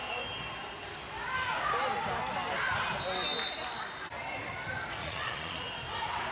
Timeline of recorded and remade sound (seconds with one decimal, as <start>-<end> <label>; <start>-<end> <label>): 0.0-5.0 recorded; 5.0-5.6 remade; 5.6-6.3 recorded